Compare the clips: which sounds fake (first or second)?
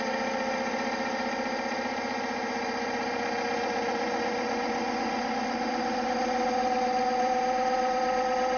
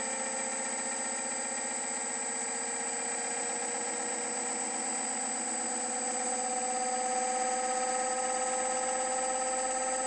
first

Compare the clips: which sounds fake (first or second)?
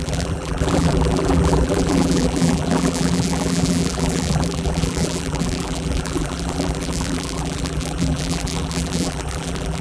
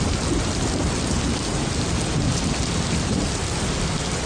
first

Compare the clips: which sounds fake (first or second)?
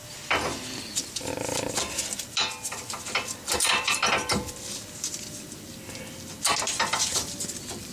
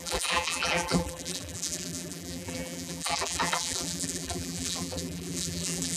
second